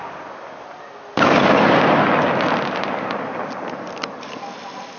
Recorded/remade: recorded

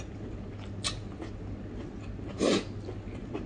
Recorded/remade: recorded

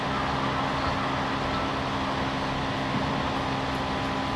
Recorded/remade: recorded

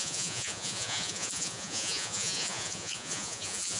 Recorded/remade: remade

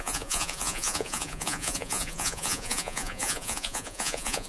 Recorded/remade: remade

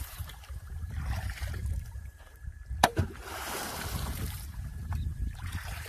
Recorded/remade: remade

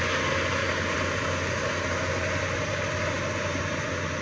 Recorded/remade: recorded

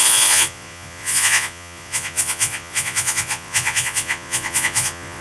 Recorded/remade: remade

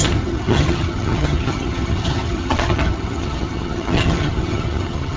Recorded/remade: remade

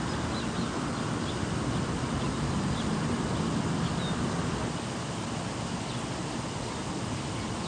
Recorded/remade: recorded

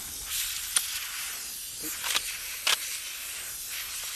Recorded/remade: recorded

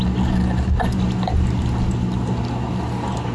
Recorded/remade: recorded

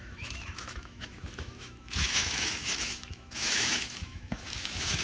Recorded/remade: remade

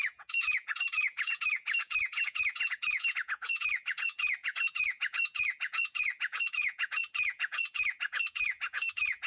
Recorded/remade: remade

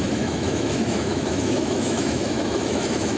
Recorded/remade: remade